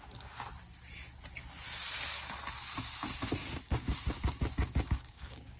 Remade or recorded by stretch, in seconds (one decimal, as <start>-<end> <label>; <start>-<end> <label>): 0.0-3.4 recorded; 3.4-5.6 remade